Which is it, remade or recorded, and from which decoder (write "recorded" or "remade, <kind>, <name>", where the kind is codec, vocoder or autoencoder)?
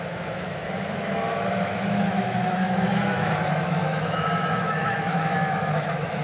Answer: remade, autoencoder, DAC-VAE